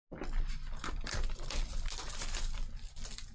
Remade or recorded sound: recorded